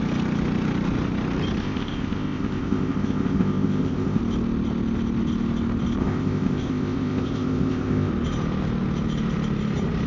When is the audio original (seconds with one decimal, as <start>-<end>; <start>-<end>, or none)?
0.0-1.6; 4.2-6.0; 8.1-10.1